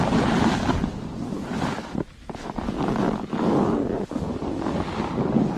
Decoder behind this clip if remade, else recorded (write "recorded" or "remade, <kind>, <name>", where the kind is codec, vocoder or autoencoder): recorded